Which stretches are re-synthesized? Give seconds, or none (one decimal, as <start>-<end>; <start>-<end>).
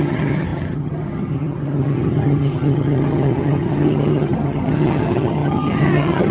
0.0-6.3